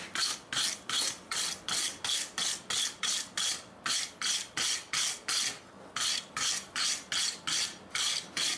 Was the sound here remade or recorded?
recorded